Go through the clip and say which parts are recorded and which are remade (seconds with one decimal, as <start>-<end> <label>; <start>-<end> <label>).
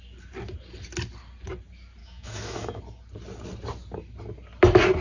0.0-2.0 recorded; 2.0-2.8 remade; 2.8-5.0 recorded